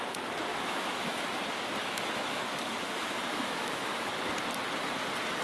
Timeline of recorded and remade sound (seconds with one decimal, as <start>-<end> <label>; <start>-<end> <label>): 0.0-0.5 recorded; 0.5-1.4 remade; 1.4-1.8 recorded; 1.8-4.1 remade; 4.1-5.4 recorded